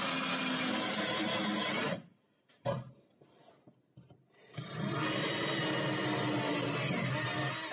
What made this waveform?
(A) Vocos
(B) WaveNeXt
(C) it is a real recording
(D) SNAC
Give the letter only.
C